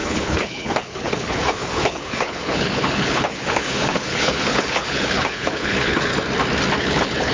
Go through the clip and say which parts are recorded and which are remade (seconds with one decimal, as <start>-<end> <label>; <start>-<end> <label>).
0.0-6.1 remade; 6.1-6.8 recorded; 6.8-7.3 remade